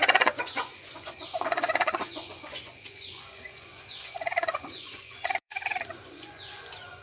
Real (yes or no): no